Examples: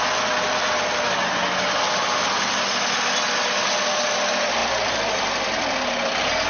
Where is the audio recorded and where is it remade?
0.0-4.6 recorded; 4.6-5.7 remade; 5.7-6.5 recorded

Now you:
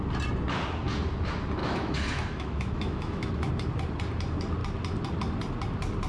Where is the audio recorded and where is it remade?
0.0-1.6 recorded; 1.6-3.5 remade; 3.5-6.1 recorded